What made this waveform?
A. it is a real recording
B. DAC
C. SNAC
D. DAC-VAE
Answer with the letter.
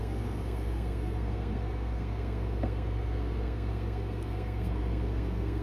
C